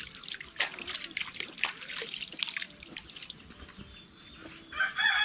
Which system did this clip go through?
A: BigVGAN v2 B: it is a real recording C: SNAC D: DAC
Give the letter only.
B